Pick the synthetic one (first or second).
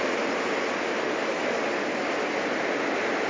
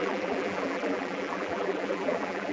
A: second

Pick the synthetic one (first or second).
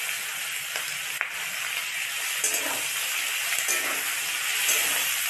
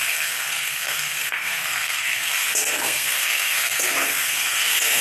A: second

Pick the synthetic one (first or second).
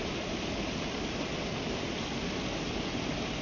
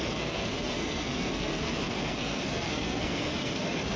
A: second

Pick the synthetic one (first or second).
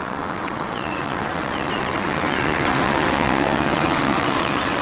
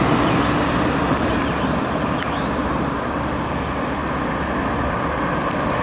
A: first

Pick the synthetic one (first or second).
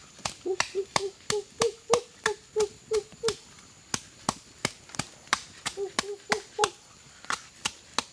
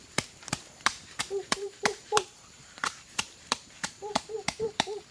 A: second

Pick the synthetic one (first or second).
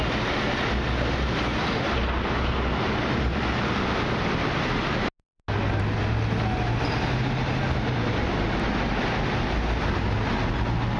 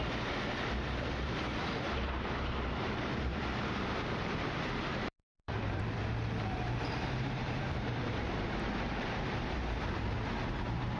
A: second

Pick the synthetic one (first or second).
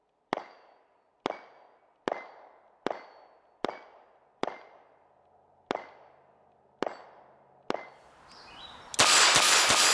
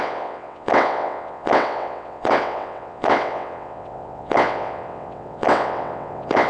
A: second